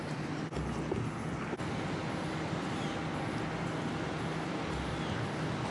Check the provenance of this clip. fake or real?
real